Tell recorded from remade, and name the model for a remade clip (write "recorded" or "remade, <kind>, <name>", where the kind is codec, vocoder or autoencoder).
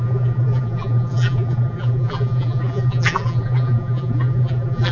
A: remade, vocoder, BigVGAN v2